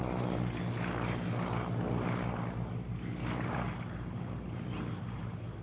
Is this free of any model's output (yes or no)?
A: yes